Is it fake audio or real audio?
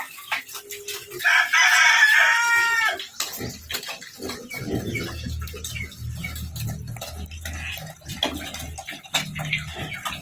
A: real